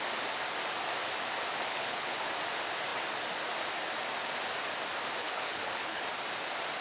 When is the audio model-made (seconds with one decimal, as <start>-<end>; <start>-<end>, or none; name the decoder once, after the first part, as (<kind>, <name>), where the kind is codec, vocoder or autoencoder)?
1.7-2.3 (codec, HILCodec); 5.2-6.0